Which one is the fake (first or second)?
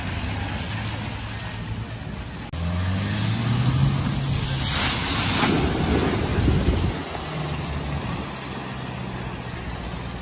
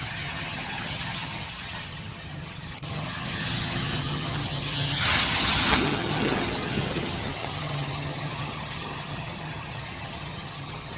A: second